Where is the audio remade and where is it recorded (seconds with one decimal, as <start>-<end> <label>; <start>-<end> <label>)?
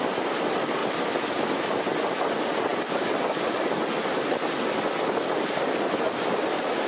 0.0-6.9 recorded